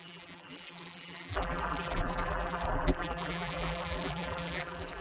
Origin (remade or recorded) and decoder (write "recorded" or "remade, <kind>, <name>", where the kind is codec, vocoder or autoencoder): remade, vocoder, BigVGAN v2